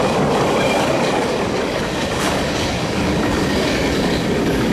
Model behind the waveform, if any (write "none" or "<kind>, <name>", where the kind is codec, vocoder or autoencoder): codec, DAC